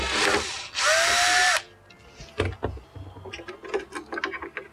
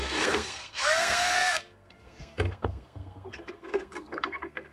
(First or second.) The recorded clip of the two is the first